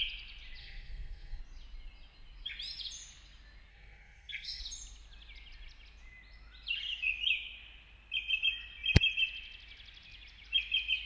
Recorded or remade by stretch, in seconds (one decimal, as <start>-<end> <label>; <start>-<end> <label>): 0.0-0.6 recorded; 0.6-1.4 remade; 1.4-3.7 recorded; 3.7-4.6 remade; 4.6-11.1 recorded